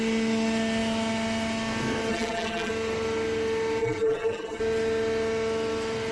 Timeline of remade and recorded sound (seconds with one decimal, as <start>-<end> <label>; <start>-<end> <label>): 0.0-2.1 recorded; 2.1-2.7 remade; 2.7-3.8 recorded; 3.8-4.6 remade; 4.6-6.1 recorded